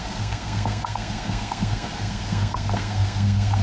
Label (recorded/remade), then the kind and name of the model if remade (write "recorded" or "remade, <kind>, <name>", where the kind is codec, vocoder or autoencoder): remade, codec, SNAC